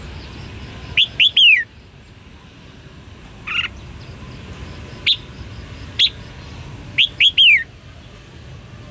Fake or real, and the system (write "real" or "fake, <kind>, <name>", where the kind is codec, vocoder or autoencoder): real